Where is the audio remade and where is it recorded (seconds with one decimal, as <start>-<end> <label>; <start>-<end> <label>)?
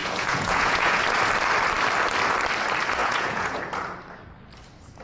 0.0-1.0 remade; 1.0-3.0 recorded; 3.0-3.6 remade; 3.6-5.0 recorded